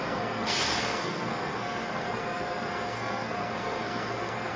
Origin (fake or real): fake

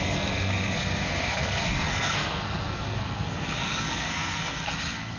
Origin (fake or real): fake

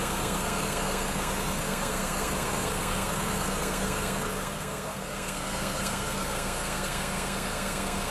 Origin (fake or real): fake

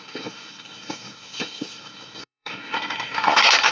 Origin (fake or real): fake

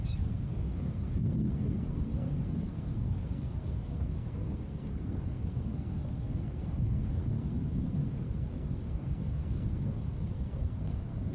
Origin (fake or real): fake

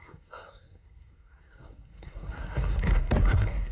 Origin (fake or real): fake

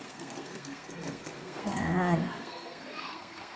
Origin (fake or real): fake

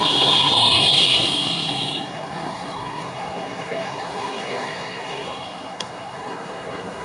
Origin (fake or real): fake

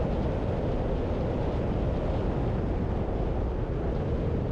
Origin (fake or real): real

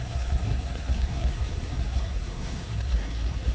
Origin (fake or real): fake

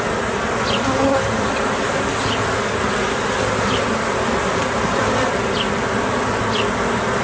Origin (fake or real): real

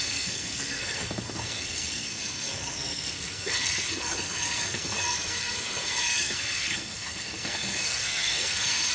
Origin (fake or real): fake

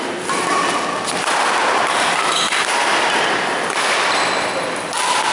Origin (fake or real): real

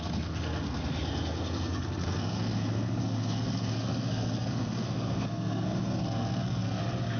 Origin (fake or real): fake